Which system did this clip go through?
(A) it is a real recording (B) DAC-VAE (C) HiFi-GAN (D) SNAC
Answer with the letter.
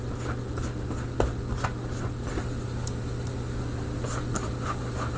A